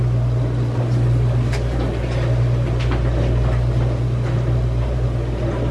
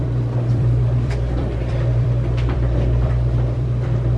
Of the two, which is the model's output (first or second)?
second